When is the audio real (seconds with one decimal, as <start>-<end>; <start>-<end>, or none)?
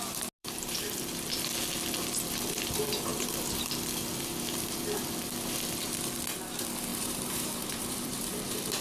0.0-0.4; 1.1-6.9